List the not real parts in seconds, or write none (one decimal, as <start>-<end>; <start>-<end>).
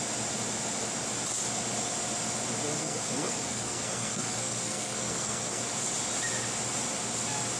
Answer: 2.8-5.6